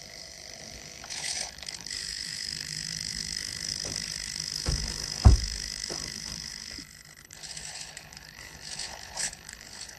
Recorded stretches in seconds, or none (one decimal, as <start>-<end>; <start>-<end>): none